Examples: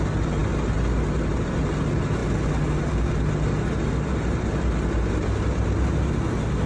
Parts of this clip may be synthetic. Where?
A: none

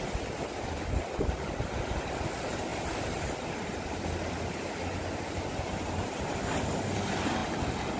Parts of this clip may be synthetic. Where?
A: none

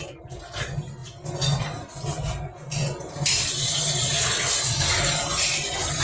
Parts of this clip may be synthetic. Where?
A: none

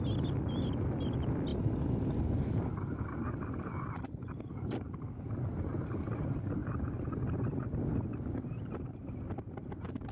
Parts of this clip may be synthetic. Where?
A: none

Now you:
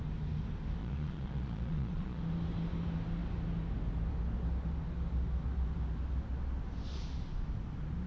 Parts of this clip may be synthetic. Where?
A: 0.8-2.2 (vocoder, Vocos)

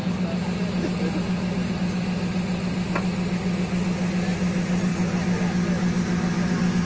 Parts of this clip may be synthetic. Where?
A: none